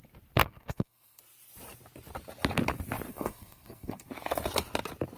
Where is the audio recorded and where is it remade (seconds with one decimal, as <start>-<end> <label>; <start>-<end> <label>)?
0.0-0.4 recorded; 0.4-1.2 remade; 1.2-3.1 recorded; 3.1-4.1 remade; 4.1-5.2 recorded